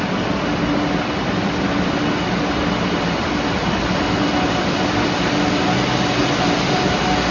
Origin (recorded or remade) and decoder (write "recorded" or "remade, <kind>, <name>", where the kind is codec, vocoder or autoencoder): recorded